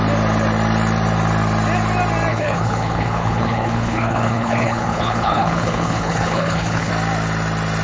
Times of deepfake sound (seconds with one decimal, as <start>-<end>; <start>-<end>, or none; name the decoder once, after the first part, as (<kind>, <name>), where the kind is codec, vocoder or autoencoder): 2.3-6.9 (codec, HILCodec)